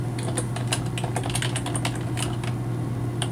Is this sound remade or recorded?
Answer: recorded